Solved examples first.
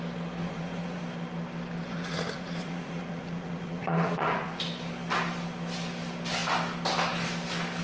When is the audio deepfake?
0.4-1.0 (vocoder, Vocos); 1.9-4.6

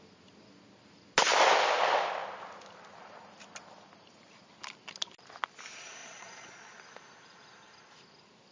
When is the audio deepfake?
6.0-6.8 (vocoder, Vocos)

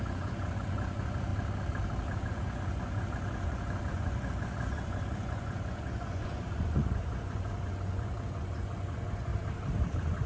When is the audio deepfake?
0.0-1.3 (vocoder, Vocos); 2.2-9.3; 9.9-10.3

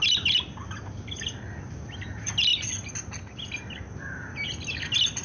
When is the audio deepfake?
none

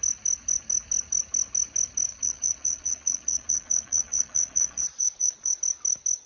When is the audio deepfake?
2.1-5.6 (vocoder, Vocos)

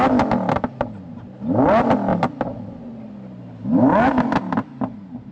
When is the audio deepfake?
none

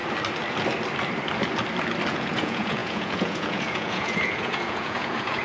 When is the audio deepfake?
2.1-5.4 (vocoder, Vocos)